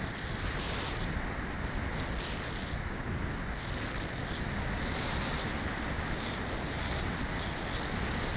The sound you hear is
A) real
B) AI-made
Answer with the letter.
A